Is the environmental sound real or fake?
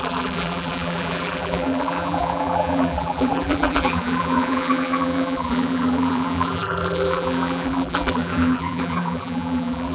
fake